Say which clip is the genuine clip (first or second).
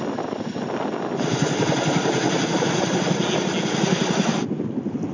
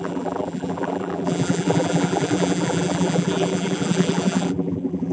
first